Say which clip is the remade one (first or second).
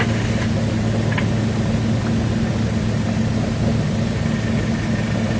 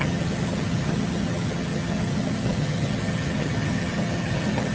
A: second